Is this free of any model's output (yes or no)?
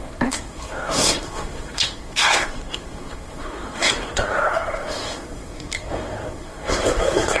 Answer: no